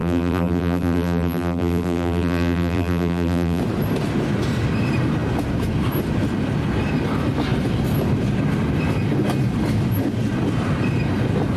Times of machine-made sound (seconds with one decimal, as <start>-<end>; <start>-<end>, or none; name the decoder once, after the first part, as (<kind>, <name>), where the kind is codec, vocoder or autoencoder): 0.0-3.6 (vocoder, BigVGAN v2)